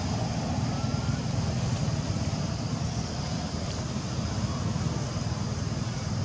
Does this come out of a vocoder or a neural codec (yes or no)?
no